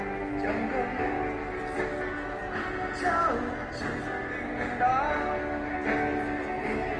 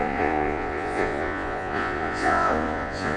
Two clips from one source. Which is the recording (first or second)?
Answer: first